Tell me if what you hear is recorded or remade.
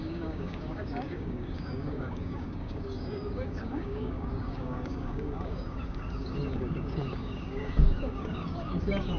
remade